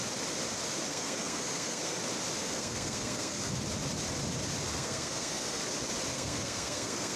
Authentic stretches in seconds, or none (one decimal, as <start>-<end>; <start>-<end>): 0.0-0.9; 2.0-2.4; 3.5-4.7; 5.6-6.1